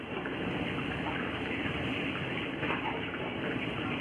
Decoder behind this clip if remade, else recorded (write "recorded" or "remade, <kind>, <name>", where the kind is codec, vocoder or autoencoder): remade, vocoder, BigVGAN v2